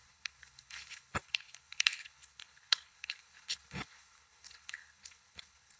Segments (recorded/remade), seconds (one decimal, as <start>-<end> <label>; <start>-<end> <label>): 0.0-5.8 remade